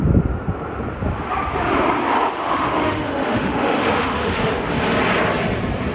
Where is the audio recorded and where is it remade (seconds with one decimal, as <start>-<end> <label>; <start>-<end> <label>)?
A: 0.0-2.4 recorded; 2.4-4.6 remade; 4.6-5.9 recorded